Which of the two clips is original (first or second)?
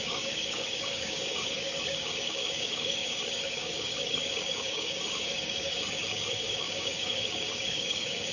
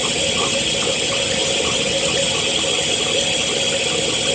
second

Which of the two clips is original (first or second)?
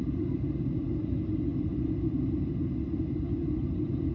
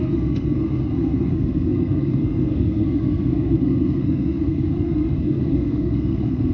first